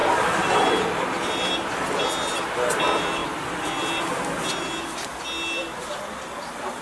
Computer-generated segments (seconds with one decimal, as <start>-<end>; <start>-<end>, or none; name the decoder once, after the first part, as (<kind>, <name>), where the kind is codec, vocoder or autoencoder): 0.0-1.5 (vocoder, BigVGAN v2)